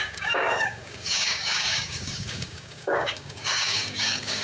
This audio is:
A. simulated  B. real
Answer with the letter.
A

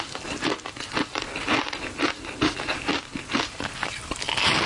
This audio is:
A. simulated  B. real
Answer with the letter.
B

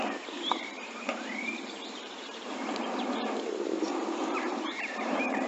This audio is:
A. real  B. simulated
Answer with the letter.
B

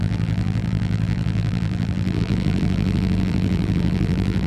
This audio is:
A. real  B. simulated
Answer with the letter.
B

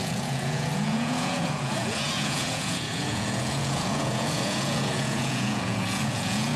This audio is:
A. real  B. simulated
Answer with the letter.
B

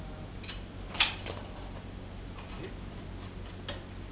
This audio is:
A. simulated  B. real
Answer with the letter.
B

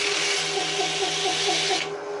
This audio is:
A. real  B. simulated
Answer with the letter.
A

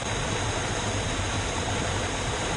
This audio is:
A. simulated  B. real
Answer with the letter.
A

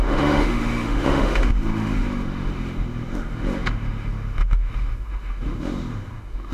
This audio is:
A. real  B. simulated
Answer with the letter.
B